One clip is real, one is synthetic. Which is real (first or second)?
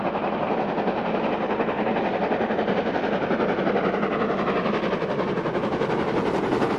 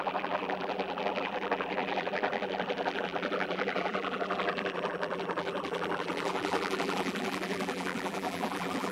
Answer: first